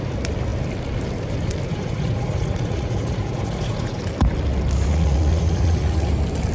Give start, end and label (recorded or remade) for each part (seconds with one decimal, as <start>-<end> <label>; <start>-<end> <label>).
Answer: 0.0-1.7 recorded; 1.7-4.0 remade; 4.0-4.9 recorded; 4.9-6.1 remade; 6.1-6.5 recorded